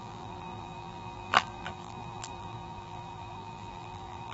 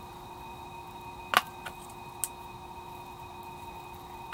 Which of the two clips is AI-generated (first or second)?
first